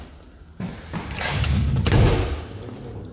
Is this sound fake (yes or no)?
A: no